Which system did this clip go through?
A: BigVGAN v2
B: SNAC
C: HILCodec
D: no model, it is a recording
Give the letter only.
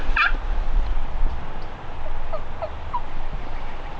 D